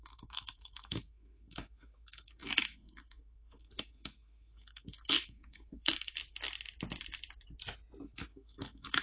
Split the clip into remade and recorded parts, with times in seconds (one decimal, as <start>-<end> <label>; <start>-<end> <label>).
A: 0.0-6.2 remade; 6.2-8.0 recorded; 8.0-9.0 remade